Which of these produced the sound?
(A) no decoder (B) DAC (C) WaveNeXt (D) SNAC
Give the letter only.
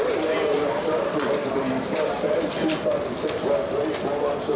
A